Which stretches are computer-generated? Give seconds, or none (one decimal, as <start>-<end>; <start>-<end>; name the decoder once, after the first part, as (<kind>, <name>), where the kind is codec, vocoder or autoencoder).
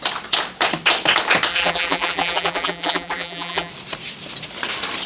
1.5-3.7 (vocoder, BigVGAN v2)